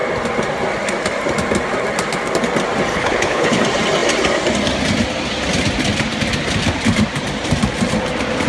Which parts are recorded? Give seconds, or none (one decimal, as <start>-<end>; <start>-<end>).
0.0-2.9; 3.6-8.5